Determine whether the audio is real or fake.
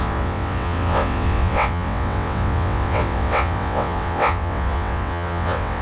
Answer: fake